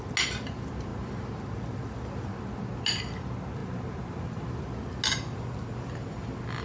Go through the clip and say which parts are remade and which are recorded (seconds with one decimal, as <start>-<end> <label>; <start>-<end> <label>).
0.0-6.6 recorded